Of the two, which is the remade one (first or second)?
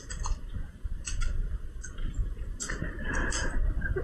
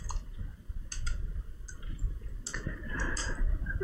first